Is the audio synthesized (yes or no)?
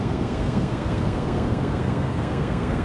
yes